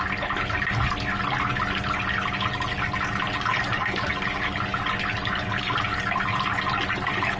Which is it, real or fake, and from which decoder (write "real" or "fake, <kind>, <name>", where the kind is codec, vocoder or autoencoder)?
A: real